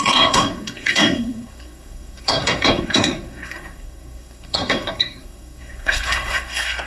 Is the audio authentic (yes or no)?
no